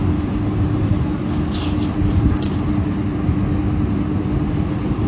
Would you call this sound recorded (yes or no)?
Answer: yes